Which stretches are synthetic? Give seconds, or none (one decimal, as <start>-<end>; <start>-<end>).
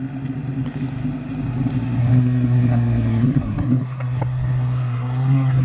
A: 2.0-5.6